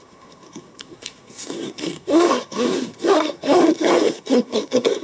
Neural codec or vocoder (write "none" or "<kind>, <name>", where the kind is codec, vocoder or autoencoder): codec, SNAC